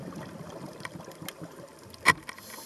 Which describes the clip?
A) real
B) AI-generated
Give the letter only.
A